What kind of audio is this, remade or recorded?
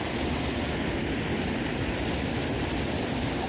recorded